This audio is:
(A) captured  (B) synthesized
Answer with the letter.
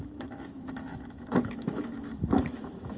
B